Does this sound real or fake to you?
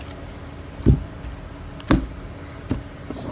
real